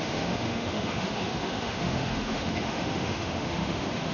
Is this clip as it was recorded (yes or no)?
no